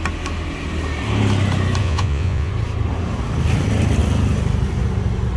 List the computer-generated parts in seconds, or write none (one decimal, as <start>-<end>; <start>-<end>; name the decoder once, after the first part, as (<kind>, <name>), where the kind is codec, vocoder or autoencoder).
1.8-2.5 (vocoder, Vocos)